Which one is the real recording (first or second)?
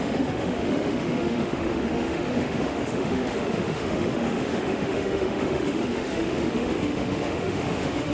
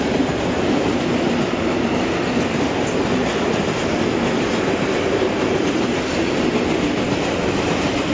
second